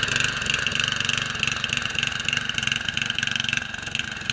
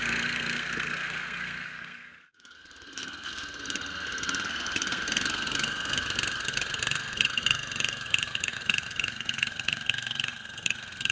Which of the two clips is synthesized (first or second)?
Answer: second